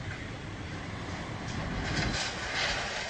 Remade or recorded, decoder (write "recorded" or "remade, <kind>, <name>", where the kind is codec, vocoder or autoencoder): recorded